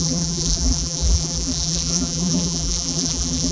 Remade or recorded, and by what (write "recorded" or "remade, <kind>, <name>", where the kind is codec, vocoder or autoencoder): remade, vocoder, BigVGAN v2